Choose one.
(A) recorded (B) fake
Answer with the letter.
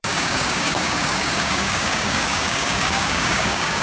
B